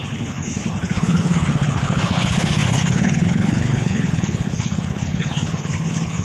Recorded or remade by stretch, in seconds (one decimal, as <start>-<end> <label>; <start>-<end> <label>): 0.0-6.2 remade